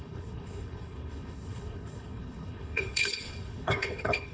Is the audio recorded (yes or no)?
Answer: no